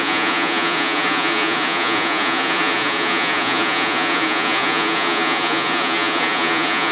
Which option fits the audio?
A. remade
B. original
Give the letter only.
A